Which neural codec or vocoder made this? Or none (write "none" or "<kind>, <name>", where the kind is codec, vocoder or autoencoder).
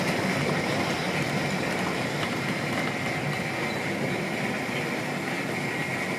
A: none